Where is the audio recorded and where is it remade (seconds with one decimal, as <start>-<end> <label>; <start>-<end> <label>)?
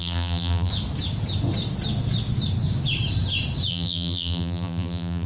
0.0-0.7 remade; 0.7-3.7 recorded; 3.7-5.3 remade